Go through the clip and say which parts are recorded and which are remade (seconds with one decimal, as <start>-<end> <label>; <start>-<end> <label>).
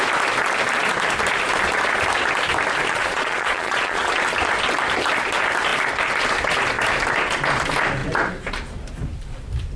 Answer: 0.0-2.9 recorded; 2.9-4.1 remade; 4.1-9.8 recorded